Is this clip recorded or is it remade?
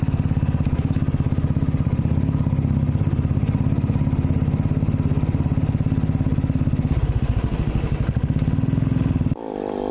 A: recorded